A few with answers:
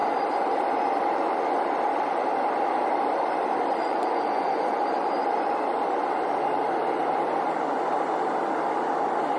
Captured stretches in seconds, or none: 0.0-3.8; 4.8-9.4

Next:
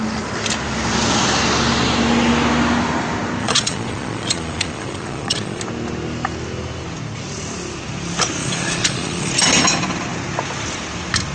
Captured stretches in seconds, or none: 0.0-3.4; 5.6-8.4; 9.3-11.3

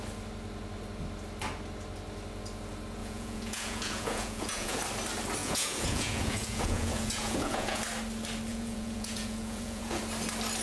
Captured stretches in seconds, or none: 0.0-3.0; 4.8-5.4; 7.8-8.5; 10.0-10.6